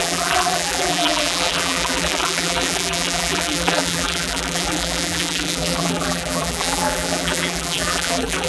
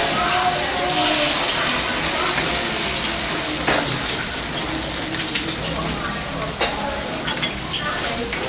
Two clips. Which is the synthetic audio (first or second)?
first